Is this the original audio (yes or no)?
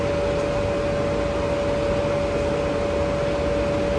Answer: yes